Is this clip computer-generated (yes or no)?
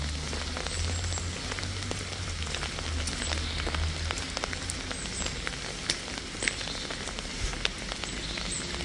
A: no